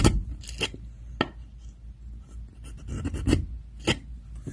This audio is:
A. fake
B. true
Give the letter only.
B